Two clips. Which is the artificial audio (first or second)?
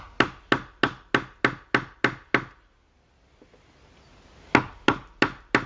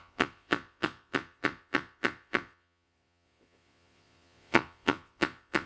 second